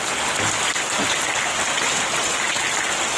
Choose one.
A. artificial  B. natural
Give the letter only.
B